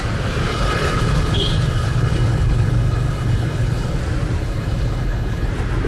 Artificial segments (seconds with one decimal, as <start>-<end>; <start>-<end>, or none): 0.5-4.0; 4.4-5.5